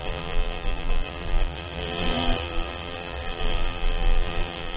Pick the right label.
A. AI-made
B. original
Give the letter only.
A